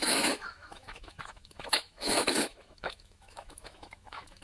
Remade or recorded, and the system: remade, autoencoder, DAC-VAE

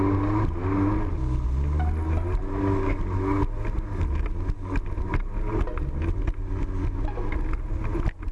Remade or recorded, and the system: recorded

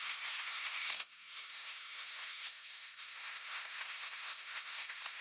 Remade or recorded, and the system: remade, codec, SNAC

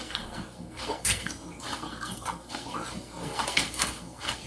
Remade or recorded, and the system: remade, codec, SNAC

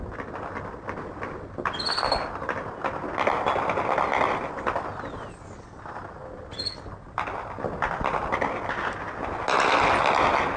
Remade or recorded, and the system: recorded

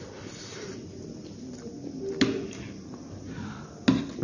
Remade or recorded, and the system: recorded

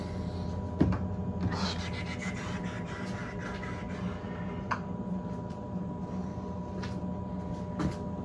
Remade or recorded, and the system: recorded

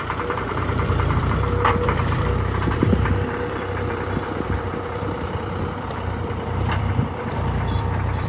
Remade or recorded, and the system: remade, vocoder, BigVGAN v2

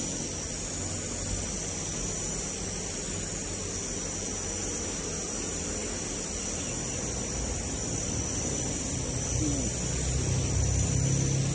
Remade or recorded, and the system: recorded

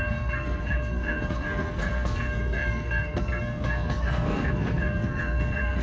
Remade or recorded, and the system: remade, codec, SNAC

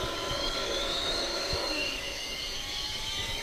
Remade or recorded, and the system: remade, codec, DAC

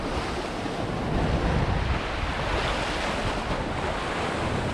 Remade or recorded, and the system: recorded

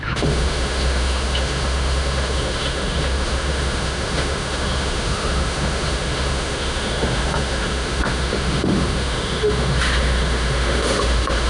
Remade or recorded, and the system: remade, autoencoder, DAC-VAE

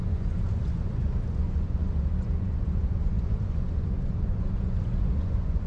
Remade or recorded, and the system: remade, vocoder, Vocos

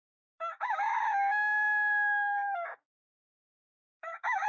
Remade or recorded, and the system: remade, codec, DAC